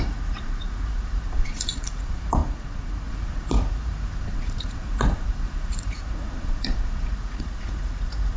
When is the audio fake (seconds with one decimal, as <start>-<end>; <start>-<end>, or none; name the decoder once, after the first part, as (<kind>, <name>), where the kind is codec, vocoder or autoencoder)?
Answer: 0.0-8.4 (vocoder, Vocos)

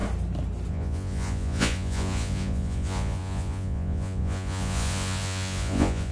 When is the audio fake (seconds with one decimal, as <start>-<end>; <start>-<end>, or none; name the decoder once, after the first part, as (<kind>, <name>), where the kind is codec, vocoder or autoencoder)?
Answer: 0.7-6.1 (vocoder, Vocos)